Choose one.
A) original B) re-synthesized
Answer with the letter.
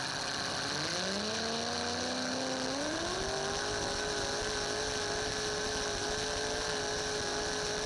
A